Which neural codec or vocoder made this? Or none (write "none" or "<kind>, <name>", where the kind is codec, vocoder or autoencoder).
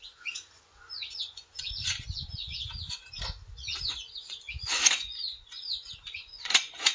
vocoder, Vocos